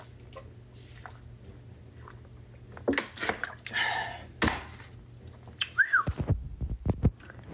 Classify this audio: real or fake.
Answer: real